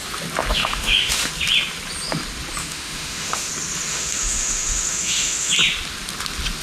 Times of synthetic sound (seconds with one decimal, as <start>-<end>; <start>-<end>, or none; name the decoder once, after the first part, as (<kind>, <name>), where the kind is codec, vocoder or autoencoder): 0.5-1.3 (autoencoder, DAC-VAE); 2.6-3.5; 3.9-5.5